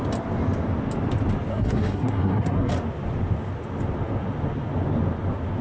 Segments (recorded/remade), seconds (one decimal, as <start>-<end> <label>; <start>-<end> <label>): 0.0-1.5 recorded; 1.5-2.7 remade; 2.7-5.6 recorded